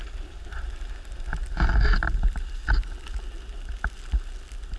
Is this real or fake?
real